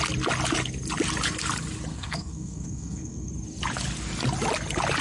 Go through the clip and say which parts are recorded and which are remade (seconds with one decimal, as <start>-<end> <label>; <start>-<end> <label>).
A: 0.0-1.9 recorded; 1.9-3.3 remade; 3.3-5.0 recorded

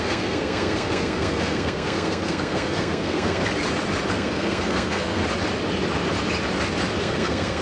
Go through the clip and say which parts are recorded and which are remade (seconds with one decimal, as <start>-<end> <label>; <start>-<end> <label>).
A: 0.0-3.4 remade; 3.4-4.1 recorded; 4.1-5.2 remade; 5.2-7.0 recorded; 7.0-7.6 remade

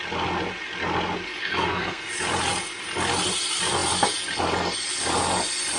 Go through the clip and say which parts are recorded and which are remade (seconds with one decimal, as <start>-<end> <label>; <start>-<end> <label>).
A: 0.0-1.4 recorded; 1.4-2.1 remade; 2.1-5.8 recorded

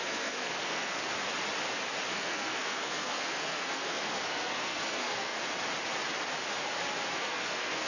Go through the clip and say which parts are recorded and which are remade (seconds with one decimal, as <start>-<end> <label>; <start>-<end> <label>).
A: 0.0-1.0 remade; 1.0-2.1 recorded; 2.1-5.4 remade; 5.4-7.1 recorded; 7.1-7.9 remade

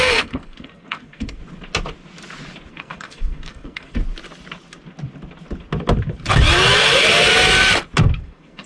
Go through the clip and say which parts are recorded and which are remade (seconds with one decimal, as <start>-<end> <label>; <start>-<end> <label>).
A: 0.0-1.4 remade; 1.4-2.7 recorded; 2.7-4.0 remade; 4.0-8.0 recorded; 8.0-8.7 remade

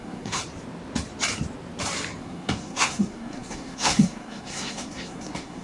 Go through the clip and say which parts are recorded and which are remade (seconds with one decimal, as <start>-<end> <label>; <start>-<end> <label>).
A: 0.0-0.4 remade; 0.4-2.2 recorded; 2.2-5.6 remade